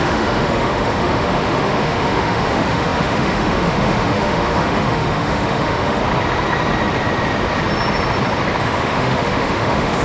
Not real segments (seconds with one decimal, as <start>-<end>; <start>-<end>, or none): 0.0-6.0; 8.6-10.0

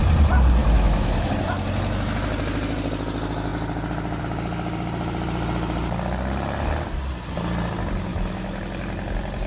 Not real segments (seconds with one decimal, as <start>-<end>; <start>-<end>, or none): 0.6-1.3; 8.1-8.6

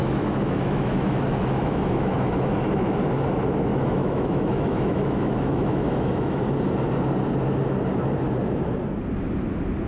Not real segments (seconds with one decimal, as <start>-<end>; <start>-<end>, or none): 0.0-3.0; 3.7-6.4

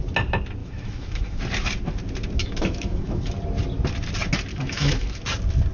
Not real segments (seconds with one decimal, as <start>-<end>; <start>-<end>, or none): 0.6-1.4; 2.4-3.3; 4.5-5.2